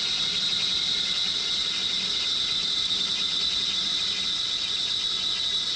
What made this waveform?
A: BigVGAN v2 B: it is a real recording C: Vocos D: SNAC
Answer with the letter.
B